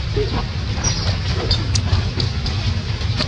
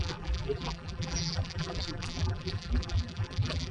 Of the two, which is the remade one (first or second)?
second